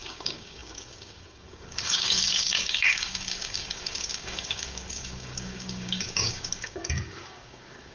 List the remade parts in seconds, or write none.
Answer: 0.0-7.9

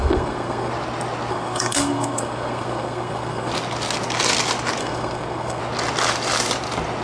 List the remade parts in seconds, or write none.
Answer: 0.0-0.7; 1.3-3.5; 4.8-5.6

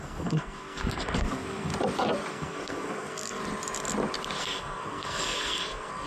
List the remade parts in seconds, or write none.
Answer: 0.0-1.7; 2.3-3.4; 4.4-6.1

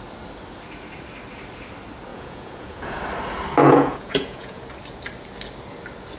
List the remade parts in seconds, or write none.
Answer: 2.1-3.0; 3.6-4.6

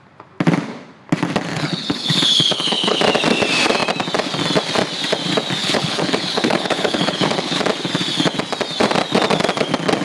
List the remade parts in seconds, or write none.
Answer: 1.5-3.0; 5.6-7.6

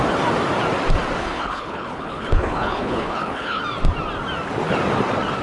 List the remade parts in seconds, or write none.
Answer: 1.2-3.6

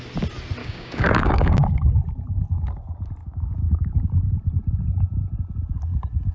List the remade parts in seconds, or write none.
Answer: 0.6-1.9; 3.2-3.9